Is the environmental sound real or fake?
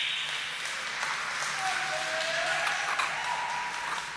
real